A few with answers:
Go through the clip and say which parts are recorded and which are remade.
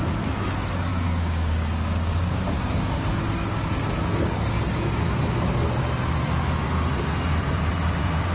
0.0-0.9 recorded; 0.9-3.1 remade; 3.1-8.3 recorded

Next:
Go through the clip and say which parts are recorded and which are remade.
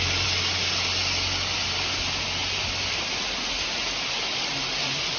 0.0-5.2 recorded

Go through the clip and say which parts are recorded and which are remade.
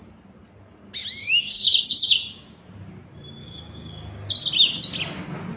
0.0-1.2 recorded; 1.2-2.6 remade; 2.6-3.4 recorded; 3.4-4.3 remade; 4.3-5.6 recorded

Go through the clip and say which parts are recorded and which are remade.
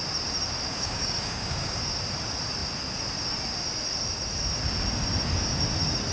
0.0-0.7 recorded; 0.7-1.8 remade; 1.8-6.1 recorded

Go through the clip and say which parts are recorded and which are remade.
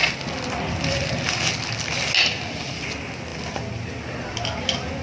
0.0-5.0 recorded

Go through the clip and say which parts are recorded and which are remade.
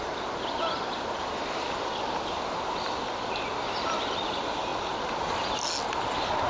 0.0-6.5 recorded